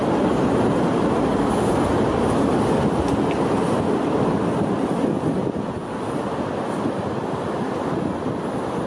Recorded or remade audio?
recorded